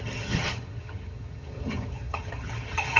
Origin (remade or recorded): remade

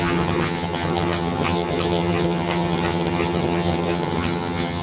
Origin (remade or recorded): remade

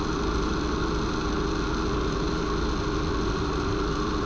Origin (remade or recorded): recorded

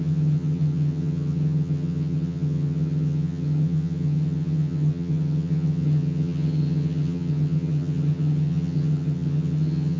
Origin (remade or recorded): remade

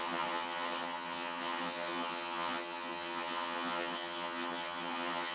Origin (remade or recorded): remade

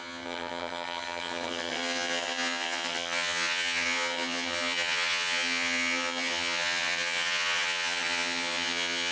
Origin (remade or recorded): remade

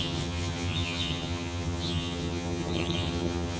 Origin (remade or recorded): remade